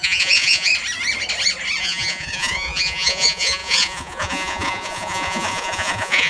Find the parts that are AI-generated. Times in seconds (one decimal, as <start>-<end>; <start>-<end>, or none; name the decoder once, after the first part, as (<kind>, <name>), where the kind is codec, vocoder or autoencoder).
0.0-0.7 (vocoder, Vocos); 1.8-6.3